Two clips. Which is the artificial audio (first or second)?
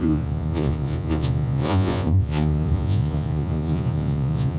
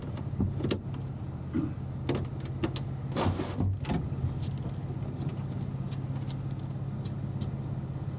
first